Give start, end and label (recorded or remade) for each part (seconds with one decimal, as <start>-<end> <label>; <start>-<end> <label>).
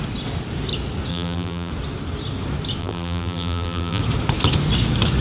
0.0-1.1 recorded; 1.1-1.7 remade; 1.7-2.8 recorded; 2.8-4.0 remade; 4.0-5.2 recorded